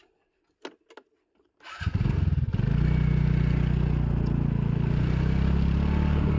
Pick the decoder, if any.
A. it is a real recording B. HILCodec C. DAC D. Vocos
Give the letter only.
A